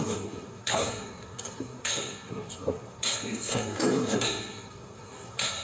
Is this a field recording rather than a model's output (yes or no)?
no